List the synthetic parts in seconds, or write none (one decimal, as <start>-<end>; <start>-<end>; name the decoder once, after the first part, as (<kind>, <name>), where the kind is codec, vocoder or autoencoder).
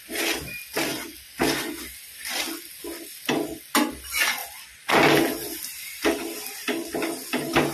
none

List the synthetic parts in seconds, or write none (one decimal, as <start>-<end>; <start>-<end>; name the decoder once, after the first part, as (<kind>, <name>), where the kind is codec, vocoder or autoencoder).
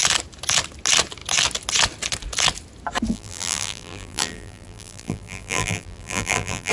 3.1-6.7 (vocoder, BigVGAN v2)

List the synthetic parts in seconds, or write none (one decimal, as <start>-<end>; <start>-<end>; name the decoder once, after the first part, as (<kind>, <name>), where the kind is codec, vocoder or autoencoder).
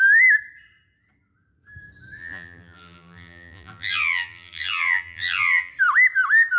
2.2-5.7 (vocoder, BigVGAN v2)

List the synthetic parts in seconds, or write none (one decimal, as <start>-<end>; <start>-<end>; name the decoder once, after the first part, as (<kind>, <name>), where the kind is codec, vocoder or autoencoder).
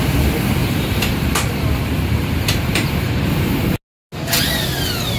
0.6-3.5 (vocoder, BigVGAN v2)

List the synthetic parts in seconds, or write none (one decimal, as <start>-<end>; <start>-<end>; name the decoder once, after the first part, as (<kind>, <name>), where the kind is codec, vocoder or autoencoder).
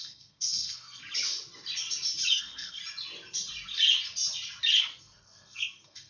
0.0-1.0 (codec, SNAC); 2.4-2.8; 5.0-6.1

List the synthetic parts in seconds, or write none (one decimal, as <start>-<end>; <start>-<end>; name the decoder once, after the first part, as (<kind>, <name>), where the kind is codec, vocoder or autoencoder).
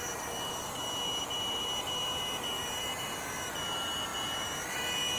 none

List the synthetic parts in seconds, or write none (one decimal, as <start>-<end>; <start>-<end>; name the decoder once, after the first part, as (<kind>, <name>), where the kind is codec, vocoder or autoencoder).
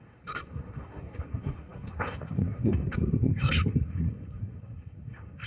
0.0-5.5 (codec, SNAC)